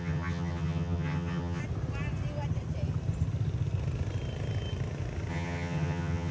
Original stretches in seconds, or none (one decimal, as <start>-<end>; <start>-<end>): 1.6-5.3